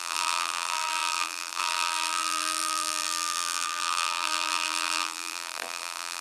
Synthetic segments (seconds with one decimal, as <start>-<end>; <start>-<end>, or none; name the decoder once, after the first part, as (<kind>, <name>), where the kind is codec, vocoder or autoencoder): 0.0-6.2 (vocoder, BigVGAN v2)